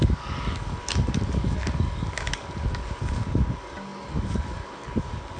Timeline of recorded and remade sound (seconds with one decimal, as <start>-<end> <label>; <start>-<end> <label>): 0.0-5.4 remade